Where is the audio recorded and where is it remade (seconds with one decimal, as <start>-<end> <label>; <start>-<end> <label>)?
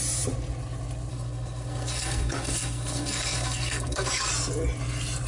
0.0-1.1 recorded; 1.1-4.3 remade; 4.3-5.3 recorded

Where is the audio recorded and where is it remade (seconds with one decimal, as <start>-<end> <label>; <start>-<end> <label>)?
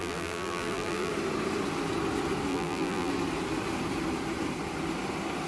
0.0-1.1 remade; 1.1-2.5 recorded; 2.5-3.1 remade; 3.1-5.5 recorded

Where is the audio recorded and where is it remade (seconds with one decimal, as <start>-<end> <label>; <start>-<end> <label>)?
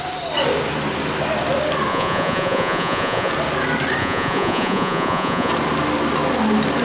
0.0-1.9 recorded; 1.9-3.3 remade; 3.3-4.0 recorded; 4.0-5.5 remade; 5.5-6.8 recorded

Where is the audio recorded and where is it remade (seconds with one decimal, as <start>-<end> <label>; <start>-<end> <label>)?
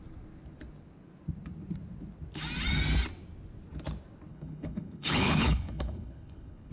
0.0-4.3 recorded; 4.3-6.7 remade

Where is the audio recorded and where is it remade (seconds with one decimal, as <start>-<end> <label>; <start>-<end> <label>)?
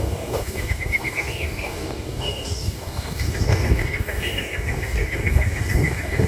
0.0-6.3 remade